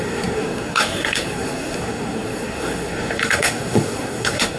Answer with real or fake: fake